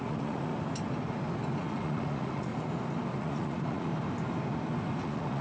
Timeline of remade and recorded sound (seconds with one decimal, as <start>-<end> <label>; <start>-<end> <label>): 0.0-0.5 remade; 0.5-1.6 recorded; 1.6-2.5 remade; 2.5-3.2 recorded; 3.2-3.9 remade; 3.9-5.0 recorded; 5.0-5.4 remade